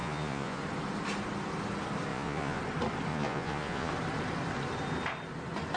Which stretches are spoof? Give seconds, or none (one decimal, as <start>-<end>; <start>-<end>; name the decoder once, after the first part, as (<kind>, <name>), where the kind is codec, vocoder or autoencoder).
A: 0.0-0.6 (vocoder, Vocos); 2.1-2.6; 3.1-3.9